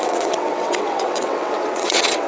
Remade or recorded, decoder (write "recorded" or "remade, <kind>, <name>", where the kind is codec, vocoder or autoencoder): remade, vocoder, WaveNeXt